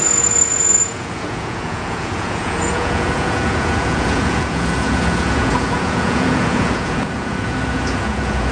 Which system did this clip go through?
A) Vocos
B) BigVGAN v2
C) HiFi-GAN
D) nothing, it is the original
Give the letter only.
A